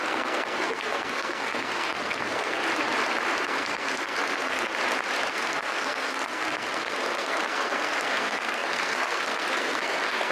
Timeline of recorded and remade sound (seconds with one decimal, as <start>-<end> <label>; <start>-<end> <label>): 0.0-2.6 remade; 2.6-3.4 recorded; 3.4-4.7 remade; 4.7-5.3 recorded; 5.3-10.3 remade